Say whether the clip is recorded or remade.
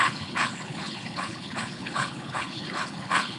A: remade